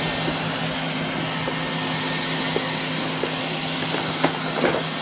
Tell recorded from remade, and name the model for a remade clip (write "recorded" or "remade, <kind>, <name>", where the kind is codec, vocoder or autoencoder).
recorded